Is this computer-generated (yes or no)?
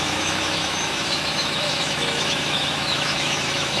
yes